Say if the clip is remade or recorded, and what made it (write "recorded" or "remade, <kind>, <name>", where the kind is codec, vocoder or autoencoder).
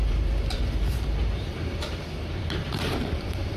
remade, vocoder, BigVGAN v2